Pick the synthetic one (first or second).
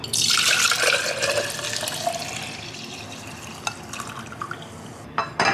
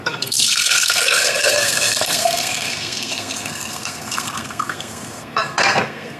second